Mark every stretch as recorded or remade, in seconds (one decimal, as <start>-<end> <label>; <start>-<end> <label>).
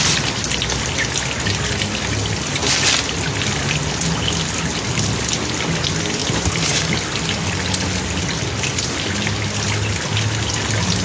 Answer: 0.0-11.0 recorded